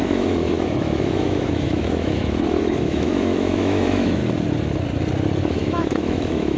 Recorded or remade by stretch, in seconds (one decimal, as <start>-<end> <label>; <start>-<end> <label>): 0.0-4.2 remade; 4.2-5.4 recorded; 5.4-6.6 remade